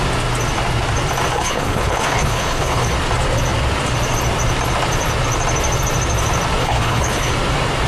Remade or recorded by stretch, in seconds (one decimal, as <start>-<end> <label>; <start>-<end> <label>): 0.0-1.3 recorded; 1.3-2.9 remade; 2.9-6.6 recorded; 6.6-7.3 remade; 7.3-7.9 recorded